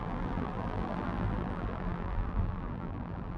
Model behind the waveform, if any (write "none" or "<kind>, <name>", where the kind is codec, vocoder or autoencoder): vocoder, BigVGAN v2